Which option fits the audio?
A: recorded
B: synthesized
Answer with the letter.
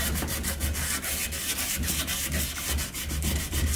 A